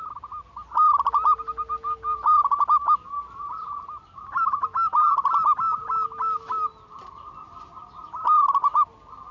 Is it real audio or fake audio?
real